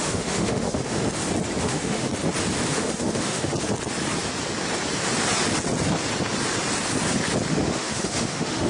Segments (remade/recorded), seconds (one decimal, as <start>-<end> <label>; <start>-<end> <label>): 0.0-1.0 remade; 1.0-1.6 recorded; 1.6-2.1 remade; 2.1-2.7 recorded; 2.7-3.5 remade; 3.5-7.5 recorded; 7.5-8.7 remade